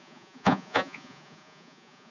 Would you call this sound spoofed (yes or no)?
yes